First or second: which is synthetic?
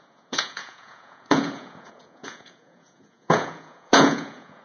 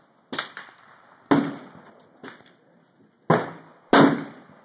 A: first